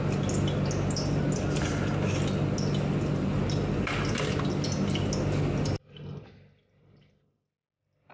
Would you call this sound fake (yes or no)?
no